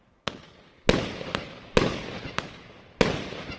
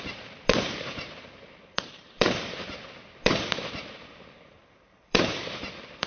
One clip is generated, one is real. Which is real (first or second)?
first